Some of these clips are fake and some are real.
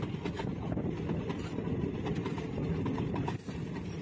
real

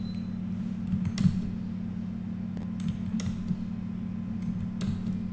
real